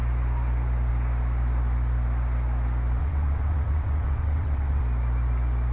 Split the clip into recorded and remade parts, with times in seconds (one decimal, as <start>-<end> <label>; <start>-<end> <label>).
0.0-3.0 recorded; 3.0-4.8 remade; 4.8-5.7 recorded